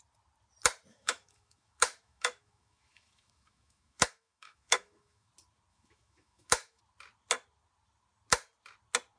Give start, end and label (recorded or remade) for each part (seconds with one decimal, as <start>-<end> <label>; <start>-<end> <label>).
0.0-0.9 recorded; 0.9-5.3 remade; 5.3-5.7 recorded; 5.7-6.8 remade; 6.8-9.2 recorded